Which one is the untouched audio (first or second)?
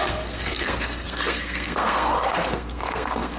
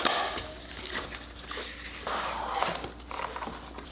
second